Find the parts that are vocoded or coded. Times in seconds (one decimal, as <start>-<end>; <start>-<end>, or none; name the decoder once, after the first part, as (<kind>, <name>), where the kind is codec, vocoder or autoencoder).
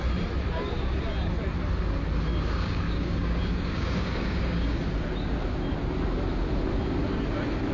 2.3-4.8 (codec, DAC)